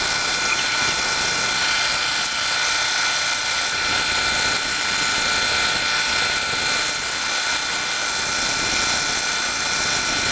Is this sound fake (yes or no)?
no